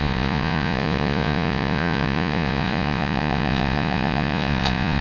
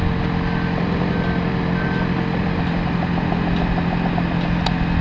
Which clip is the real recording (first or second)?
second